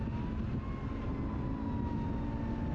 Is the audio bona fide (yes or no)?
yes